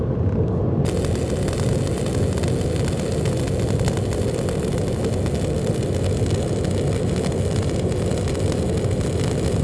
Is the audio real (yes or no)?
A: yes